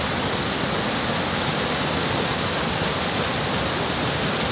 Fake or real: real